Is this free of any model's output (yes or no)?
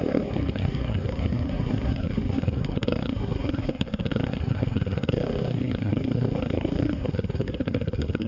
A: no